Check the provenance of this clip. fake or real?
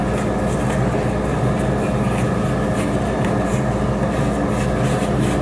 real